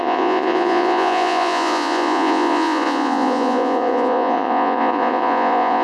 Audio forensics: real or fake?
fake